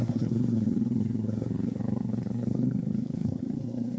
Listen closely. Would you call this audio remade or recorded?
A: remade